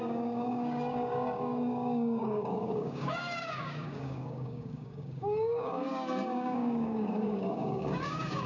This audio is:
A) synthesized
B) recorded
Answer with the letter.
A